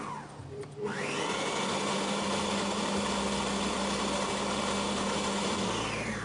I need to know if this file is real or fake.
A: real